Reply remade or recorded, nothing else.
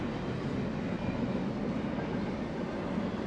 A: recorded